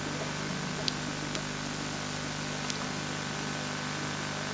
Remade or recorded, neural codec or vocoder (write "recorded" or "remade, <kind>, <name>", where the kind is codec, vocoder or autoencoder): recorded